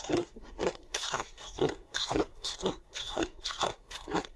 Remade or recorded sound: remade